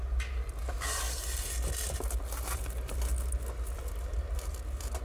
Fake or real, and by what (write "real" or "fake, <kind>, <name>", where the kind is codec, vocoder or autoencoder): real